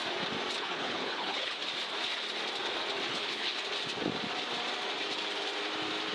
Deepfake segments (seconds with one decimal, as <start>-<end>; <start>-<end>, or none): 0.6-1.6; 3.1-3.5